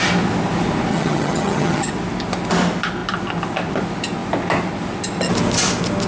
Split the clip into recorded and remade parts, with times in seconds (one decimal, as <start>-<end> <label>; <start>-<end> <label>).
0.0-0.9 recorded; 0.9-1.9 remade; 1.9-6.1 recorded